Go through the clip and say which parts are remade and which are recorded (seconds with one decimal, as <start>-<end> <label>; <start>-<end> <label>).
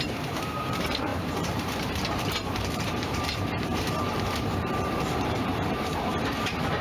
0.0-6.8 remade